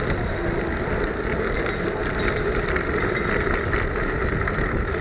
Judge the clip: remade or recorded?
recorded